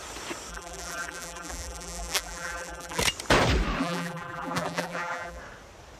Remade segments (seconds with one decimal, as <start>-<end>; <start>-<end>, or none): 0.5-3.0; 3.8-5.4